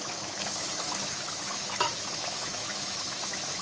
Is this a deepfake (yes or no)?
yes